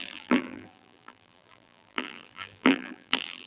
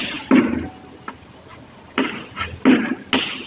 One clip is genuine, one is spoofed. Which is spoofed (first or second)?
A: first